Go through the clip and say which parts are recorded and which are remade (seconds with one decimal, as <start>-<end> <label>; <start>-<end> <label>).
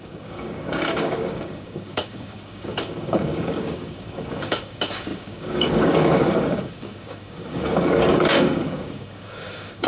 0.0-9.9 remade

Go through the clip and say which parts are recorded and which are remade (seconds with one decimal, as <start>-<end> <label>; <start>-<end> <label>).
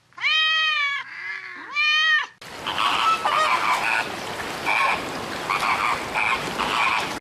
0.0-7.2 recorded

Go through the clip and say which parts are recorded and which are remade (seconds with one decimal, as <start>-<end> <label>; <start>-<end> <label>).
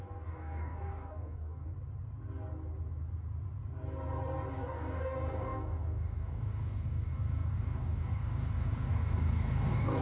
0.0-1.7 remade; 1.7-4.5 recorded; 4.5-10.0 remade